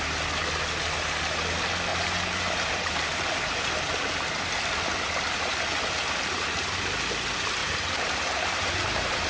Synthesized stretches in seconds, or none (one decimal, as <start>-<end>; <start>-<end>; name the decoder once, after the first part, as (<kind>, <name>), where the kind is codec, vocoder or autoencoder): 1.9-3.7 (vocoder, BigVGAN v2); 7.6-9.3

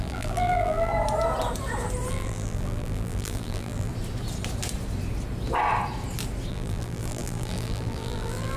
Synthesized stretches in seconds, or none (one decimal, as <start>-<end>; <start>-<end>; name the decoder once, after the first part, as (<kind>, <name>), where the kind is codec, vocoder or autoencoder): 0.0-0.9 (vocoder, BigVGAN v2); 2.1-3.9; 6.5-8.6